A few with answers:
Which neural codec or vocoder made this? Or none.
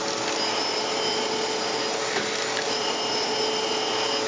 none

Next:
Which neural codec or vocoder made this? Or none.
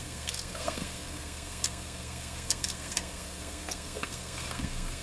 codec, SNAC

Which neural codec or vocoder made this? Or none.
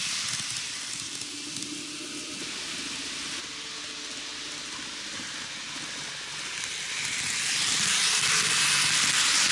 none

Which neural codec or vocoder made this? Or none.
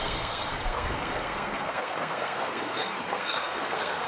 codec, SNAC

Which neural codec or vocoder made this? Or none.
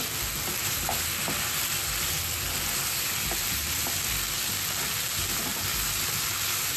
none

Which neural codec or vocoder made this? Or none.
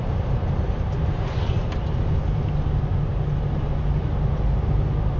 none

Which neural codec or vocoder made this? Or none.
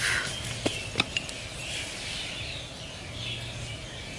none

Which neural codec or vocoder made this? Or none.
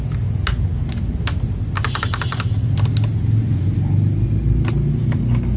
none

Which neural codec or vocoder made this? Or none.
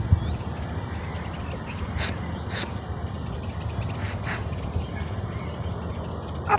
none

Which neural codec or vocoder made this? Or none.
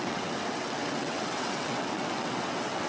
vocoder, WaveNeXt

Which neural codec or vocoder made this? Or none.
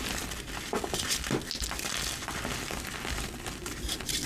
none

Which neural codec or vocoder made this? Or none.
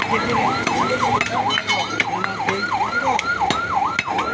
none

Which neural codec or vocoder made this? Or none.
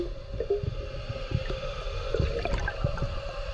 none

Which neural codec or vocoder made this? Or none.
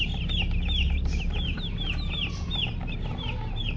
none